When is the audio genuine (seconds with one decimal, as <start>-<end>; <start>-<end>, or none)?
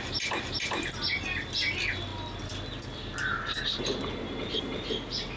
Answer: 0.0-5.4